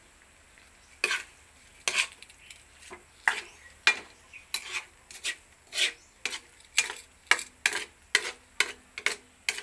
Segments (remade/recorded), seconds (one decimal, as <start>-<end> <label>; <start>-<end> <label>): 0.0-9.6 recorded